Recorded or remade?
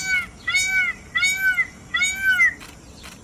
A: recorded